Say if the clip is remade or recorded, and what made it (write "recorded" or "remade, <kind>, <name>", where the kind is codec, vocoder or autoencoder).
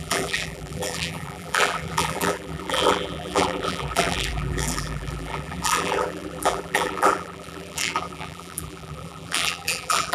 remade, vocoder, BigVGAN v2